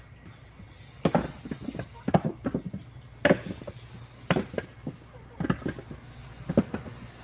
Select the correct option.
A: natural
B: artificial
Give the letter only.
A